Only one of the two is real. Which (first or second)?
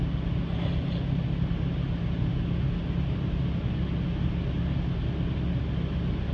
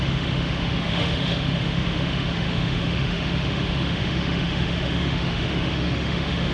first